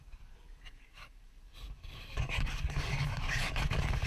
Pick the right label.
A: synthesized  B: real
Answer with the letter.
A